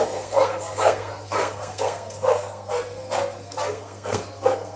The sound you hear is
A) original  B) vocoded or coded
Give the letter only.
B